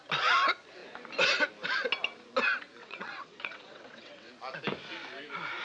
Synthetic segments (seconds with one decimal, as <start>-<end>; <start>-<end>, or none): 2.8-4.3